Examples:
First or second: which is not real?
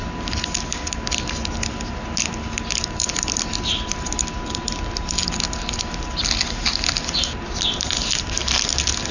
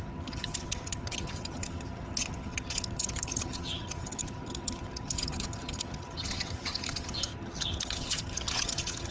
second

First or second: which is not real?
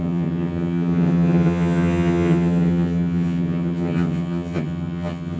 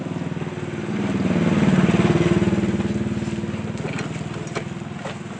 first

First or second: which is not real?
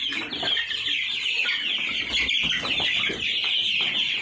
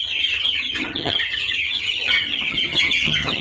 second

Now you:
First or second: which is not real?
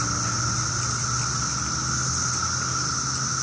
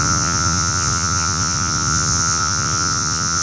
second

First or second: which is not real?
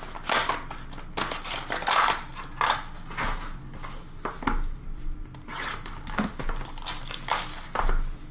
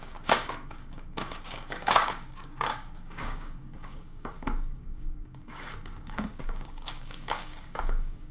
second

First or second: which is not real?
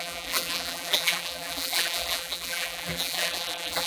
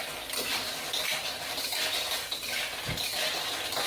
first